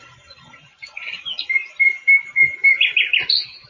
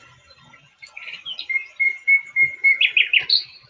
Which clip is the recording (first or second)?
second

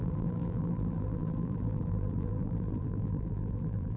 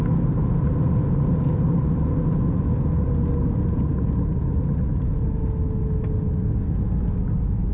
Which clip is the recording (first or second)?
second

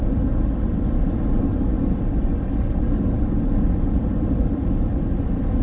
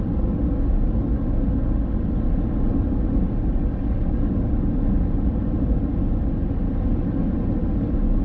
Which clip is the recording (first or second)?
second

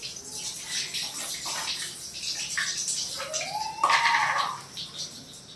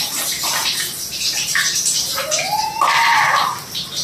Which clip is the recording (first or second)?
first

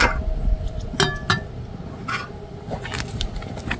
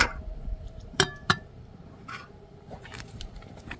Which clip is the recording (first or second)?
first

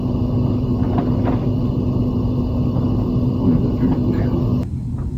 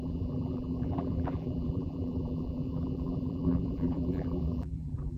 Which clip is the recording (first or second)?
first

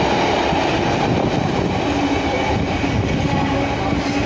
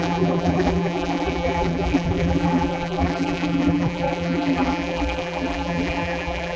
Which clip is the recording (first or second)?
first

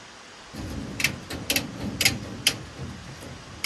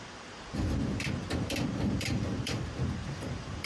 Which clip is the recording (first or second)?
first